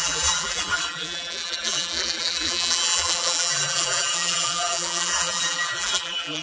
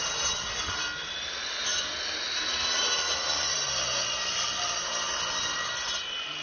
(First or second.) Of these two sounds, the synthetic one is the first